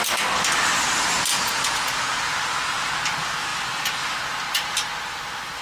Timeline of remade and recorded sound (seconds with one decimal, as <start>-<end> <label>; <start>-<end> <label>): 0.0-1.3 recorded; 1.3-2.9 remade; 2.9-5.6 recorded